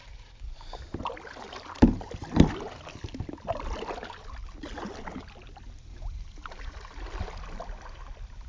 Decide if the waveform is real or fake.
real